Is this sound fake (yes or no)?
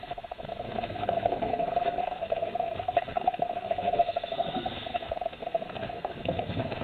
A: yes